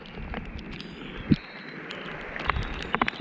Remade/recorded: recorded